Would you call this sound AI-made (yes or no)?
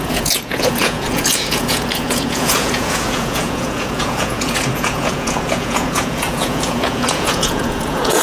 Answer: yes